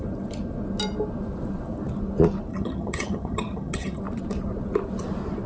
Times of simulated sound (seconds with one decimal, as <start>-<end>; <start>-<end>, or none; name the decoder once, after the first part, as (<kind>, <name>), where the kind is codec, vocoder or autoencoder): 2.5-4.0 (vocoder, HiFi-GAN)